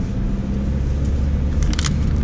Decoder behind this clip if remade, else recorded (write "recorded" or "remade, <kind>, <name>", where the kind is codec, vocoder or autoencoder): recorded